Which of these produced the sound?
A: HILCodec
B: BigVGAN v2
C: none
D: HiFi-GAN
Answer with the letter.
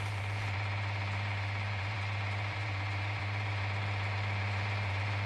B